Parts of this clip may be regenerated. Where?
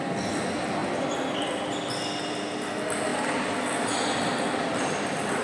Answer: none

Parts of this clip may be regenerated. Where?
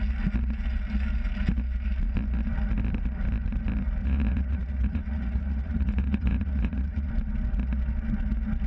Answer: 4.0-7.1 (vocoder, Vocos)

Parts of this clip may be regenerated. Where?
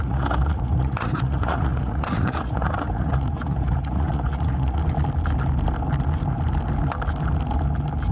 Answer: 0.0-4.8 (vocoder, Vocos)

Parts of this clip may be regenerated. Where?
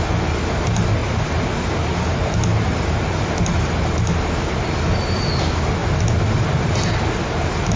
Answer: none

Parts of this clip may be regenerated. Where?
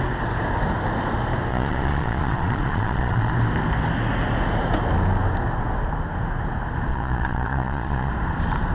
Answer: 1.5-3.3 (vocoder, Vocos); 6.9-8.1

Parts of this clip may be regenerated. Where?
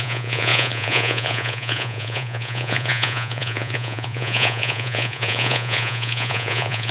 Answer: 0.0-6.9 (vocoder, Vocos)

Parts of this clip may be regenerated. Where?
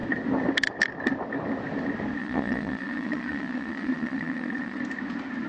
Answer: 2.2-4.8 (vocoder, Vocos)